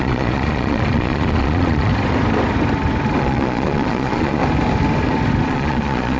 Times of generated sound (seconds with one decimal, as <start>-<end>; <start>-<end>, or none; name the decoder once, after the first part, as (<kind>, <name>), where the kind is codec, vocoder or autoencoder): 0.0-1.9 (vocoder, Vocos); 3.2-4.4; 5.5-6.2